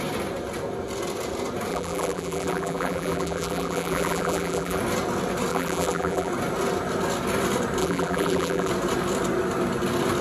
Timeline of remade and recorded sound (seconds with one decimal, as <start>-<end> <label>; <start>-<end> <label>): 0.0-1.7 recorded; 1.7-4.8 remade; 4.8-5.5 recorded; 5.5-6.3 remade; 6.3-7.8 recorded; 7.8-8.7 remade; 8.7-10.2 recorded